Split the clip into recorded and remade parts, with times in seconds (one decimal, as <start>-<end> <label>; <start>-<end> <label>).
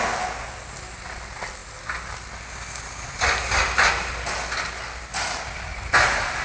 0.0-6.4 recorded